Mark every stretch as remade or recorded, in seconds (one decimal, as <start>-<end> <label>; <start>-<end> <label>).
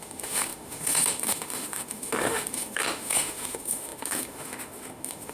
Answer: 0.0-5.3 remade